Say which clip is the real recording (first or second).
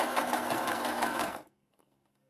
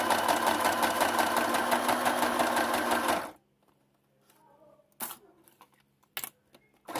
second